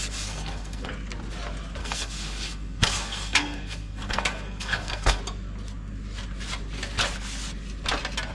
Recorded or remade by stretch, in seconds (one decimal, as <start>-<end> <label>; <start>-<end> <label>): 0.0-0.9 remade; 0.9-1.8 recorded; 1.8-5.2 remade; 5.2-8.3 recorded